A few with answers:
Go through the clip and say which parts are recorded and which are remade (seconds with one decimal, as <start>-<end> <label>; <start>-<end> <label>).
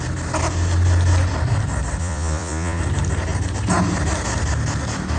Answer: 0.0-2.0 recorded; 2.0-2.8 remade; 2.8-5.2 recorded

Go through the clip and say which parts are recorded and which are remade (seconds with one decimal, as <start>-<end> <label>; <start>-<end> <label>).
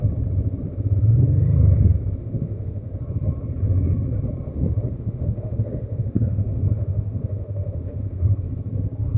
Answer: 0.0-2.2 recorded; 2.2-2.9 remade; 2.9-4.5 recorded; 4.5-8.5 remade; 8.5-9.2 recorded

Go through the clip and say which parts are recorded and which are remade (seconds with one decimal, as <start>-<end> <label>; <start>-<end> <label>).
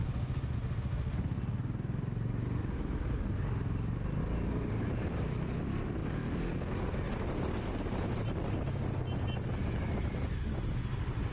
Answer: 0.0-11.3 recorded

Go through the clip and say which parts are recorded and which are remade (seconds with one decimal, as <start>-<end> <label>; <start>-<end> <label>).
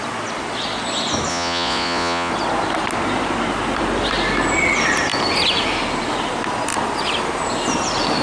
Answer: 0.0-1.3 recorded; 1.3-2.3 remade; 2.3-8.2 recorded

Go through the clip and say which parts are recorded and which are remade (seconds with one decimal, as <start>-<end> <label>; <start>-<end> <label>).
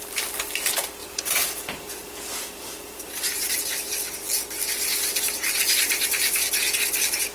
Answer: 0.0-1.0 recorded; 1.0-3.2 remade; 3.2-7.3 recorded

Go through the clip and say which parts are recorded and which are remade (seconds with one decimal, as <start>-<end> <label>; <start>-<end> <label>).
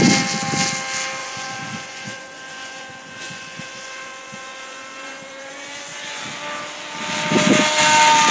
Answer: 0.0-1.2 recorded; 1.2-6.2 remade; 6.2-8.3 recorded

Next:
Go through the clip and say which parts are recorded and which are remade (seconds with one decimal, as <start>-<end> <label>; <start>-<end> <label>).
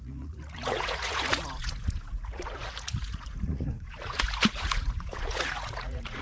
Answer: 0.0-6.2 remade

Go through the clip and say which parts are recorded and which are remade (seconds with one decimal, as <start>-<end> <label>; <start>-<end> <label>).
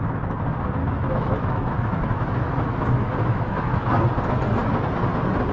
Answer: 0.0-0.8 recorded; 0.8-3.9 remade; 3.9-5.5 recorded